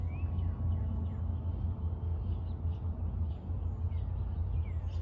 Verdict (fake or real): real